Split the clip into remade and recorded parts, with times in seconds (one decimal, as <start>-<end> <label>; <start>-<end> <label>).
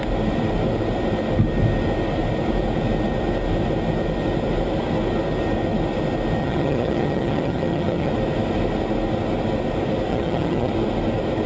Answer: 0.0-6.4 recorded; 6.4-8.1 remade; 8.1-10.1 recorded; 10.1-10.7 remade; 10.7-11.5 recorded